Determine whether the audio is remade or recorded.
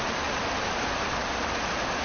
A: recorded